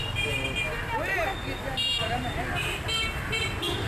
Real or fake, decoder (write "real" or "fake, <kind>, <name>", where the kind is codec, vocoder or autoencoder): real